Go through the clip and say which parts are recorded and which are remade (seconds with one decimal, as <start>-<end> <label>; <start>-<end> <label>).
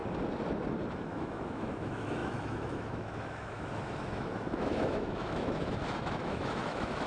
0.0-0.9 recorded; 0.9-7.1 remade